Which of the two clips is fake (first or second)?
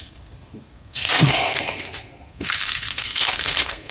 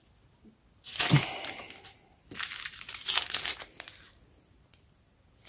first